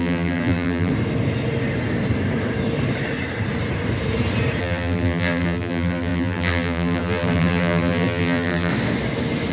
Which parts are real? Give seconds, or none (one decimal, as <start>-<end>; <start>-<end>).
0.9-4.6; 8.7-9.5